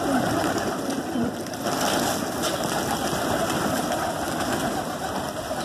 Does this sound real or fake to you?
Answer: real